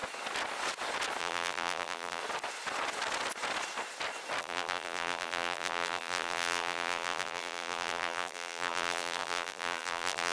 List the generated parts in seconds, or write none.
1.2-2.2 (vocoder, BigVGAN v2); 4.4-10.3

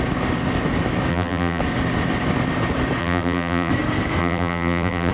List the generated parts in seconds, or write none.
1.1-1.6 (vocoder, BigVGAN v2); 3.0-3.7; 4.2-5.1

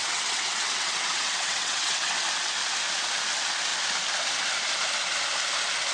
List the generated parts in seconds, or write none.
0.0-2.1 (vocoder, WaveNeXt)

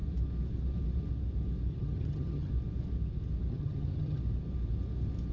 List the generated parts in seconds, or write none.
1.7-2.5 (vocoder, HiFi-GAN); 3.5-4.2

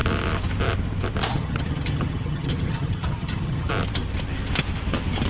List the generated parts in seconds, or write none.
1.3-3.7 (vocoder, HiFi-GAN)

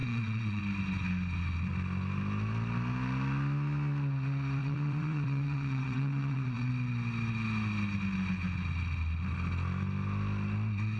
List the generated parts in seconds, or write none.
0.0-0.6 (vocoder, WaveNeXt); 4.6-6.7

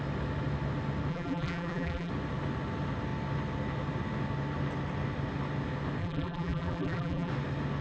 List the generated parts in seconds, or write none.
1.1-2.1 (vocoder, BigVGAN v2); 6.0-7.3

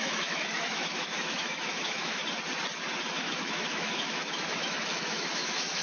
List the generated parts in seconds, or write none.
0.0-2.2 (autoencoder, DAC-VAE); 3.1-5.8